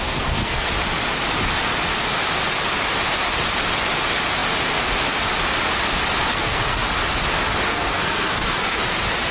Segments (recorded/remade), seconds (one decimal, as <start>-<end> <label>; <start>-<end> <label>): 0.0-0.7 remade; 0.7-6.3 recorded; 6.3-6.9 remade; 6.9-7.7 recorded; 7.7-8.8 remade; 8.8-9.3 recorded